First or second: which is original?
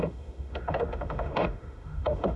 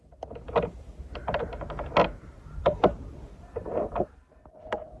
second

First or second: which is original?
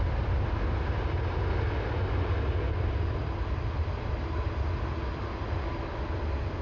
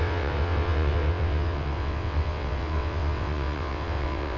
first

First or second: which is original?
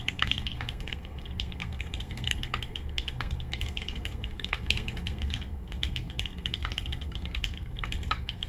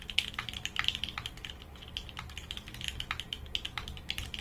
second